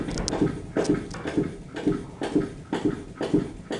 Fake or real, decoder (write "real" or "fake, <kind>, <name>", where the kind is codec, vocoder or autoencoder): real